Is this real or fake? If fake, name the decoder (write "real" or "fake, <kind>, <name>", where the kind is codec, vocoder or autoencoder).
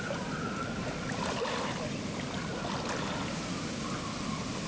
real